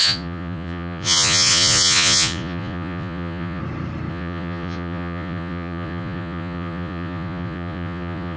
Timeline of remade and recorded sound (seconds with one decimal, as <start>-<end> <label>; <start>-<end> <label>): 0.0-3.6 remade; 3.6-4.1 recorded; 4.1-8.4 remade